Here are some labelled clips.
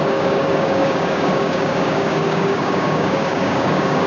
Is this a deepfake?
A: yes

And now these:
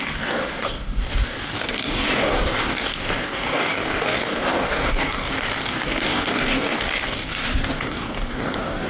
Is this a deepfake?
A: yes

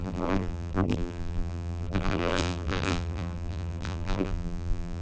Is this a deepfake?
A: yes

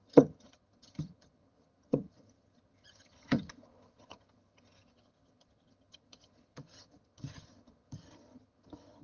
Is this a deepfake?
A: yes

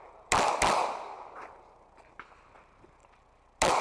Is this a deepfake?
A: no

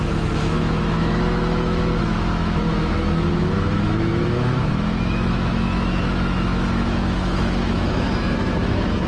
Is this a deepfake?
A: yes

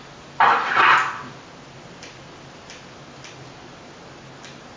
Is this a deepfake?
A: no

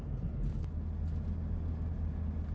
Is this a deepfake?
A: no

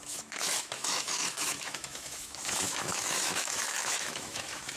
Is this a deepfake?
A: yes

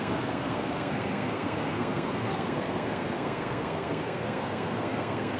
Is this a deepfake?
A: yes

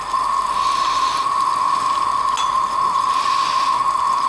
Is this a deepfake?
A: no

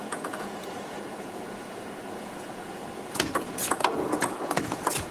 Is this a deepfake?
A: yes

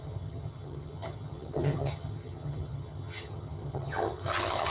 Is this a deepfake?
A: yes